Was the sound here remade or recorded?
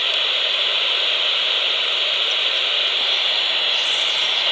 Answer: remade